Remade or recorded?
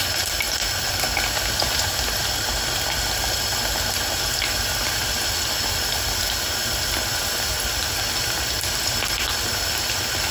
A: recorded